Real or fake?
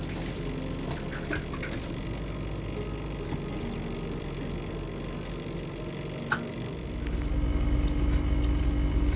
real